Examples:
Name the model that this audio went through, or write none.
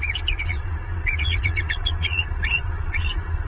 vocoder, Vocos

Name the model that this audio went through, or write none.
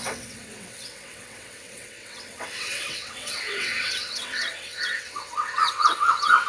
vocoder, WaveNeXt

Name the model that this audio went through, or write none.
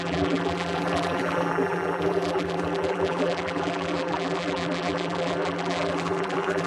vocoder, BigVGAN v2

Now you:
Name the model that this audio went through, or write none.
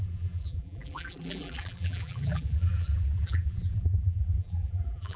vocoder, BigVGAN v2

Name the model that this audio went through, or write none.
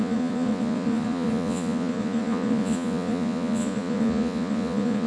vocoder, Vocos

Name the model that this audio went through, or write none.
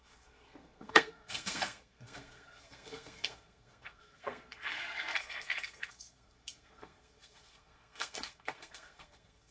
codec, SNAC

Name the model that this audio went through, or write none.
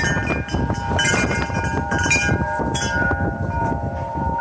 vocoder, BigVGAN v2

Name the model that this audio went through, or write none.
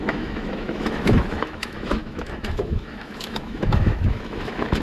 autoencoder, DAC-VAE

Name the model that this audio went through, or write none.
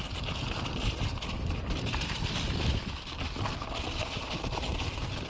none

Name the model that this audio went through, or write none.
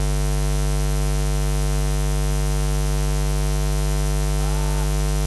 none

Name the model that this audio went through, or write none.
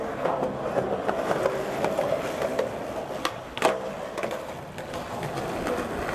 none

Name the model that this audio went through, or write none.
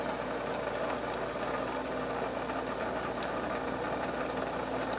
none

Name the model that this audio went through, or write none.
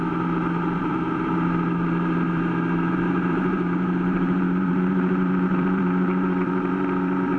vocoder, BigVGAN v2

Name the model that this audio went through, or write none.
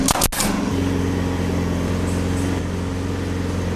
none